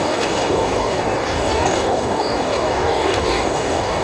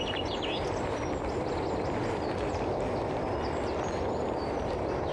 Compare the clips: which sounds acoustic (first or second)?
second